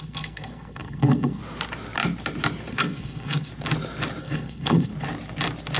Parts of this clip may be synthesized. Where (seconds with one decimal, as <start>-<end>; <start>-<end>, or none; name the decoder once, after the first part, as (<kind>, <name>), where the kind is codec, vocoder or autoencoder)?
0.0-1.4 (codec, SNAC); 2.7-3.5; 4.2-4.9